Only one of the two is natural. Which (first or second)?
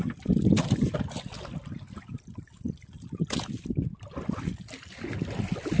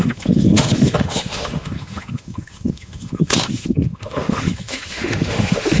first